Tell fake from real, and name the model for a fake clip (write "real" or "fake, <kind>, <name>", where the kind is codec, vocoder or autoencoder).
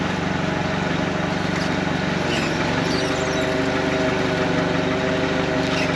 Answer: real